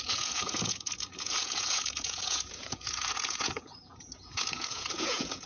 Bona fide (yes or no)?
no